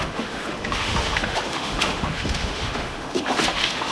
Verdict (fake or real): fake